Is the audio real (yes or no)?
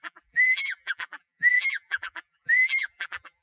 no